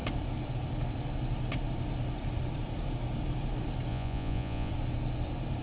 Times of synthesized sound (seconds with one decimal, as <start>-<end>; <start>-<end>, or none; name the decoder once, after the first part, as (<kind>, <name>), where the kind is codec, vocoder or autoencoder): 3.9-4.7 (vocoder, Vocos)